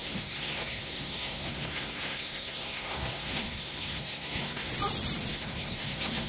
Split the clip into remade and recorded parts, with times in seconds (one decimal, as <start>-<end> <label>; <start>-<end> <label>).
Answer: 0.0-4.7 remade; 4.7-5.3 recorded; 5.3-6.3 remade